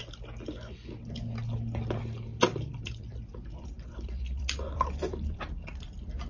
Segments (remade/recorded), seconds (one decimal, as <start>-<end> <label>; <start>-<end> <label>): 0.0-2.5 recorded; 2.5-6.3 remade